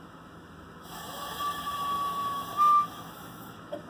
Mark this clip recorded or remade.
remade